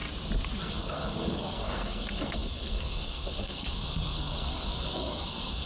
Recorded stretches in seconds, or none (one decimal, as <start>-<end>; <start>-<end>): 0.0-0.6